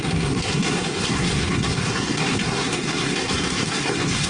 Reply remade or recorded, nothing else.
remade